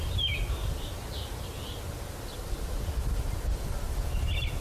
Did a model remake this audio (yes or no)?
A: no